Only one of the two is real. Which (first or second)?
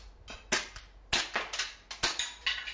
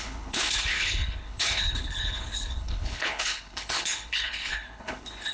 first